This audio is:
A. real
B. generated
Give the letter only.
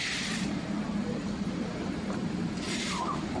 B